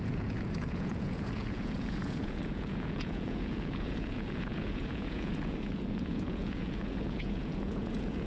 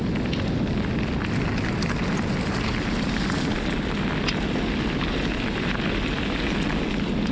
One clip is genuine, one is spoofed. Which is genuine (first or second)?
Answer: second